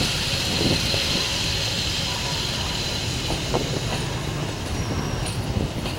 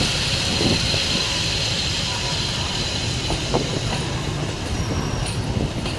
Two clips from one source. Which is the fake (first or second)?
second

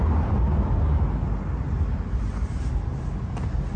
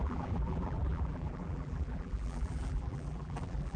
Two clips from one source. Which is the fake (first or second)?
second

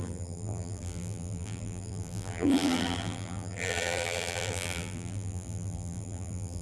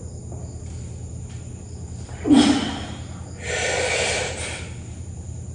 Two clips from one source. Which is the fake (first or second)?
first